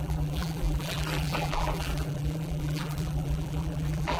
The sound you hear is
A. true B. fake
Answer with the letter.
B